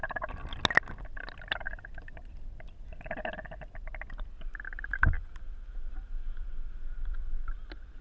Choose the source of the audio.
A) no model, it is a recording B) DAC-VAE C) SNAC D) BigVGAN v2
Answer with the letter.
A